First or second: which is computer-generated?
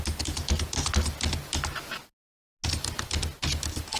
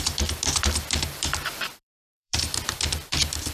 second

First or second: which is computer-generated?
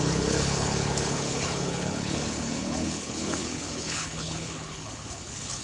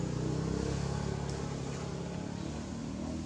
first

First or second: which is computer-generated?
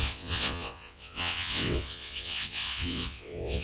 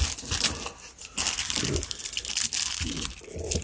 first